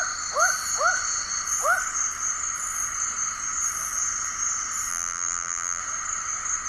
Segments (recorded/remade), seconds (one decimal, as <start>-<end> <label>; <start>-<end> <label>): 0.0-4.9 recorded; 4.9-5.8 remade; 5.8-6.7 recorded